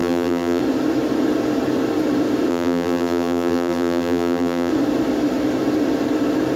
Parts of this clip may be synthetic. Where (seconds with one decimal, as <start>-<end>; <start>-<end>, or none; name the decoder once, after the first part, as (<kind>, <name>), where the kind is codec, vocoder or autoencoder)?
0.0-0.6 (vocoder, BigVGAN v2); 2.5-4.7

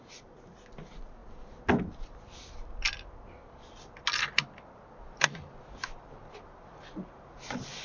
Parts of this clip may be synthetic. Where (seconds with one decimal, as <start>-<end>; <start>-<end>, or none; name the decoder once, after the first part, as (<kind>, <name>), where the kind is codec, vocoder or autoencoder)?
none